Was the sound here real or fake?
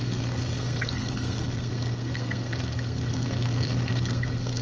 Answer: fake